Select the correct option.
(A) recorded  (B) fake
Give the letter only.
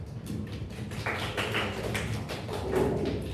A